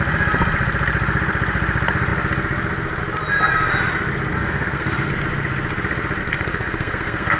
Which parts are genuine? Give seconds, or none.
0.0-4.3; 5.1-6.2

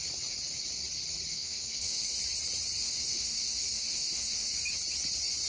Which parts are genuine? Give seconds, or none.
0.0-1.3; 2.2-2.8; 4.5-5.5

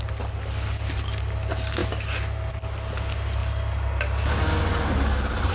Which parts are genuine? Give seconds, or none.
0.0-5.5

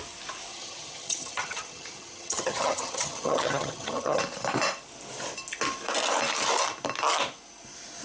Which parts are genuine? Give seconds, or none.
0.0-0.5; 4.2-8.0

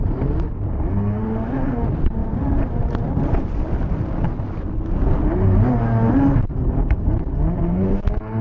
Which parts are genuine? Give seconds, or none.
0.0-2.2; 3.7-8.4

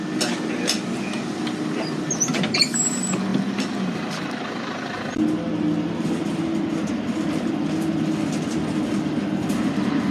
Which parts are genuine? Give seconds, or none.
0.0-10.1

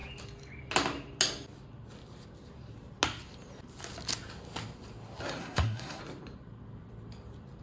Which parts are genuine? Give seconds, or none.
0.0-5.4; 6.0-7.6